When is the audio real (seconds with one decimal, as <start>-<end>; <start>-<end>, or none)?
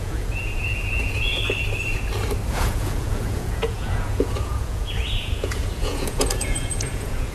1.3-2.5